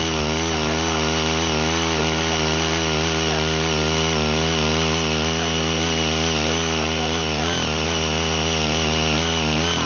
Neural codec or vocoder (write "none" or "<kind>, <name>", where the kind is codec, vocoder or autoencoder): none